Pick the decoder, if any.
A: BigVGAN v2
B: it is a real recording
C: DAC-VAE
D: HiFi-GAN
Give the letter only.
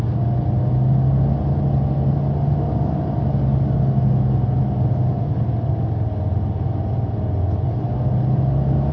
B